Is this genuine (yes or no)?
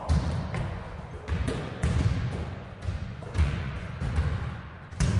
no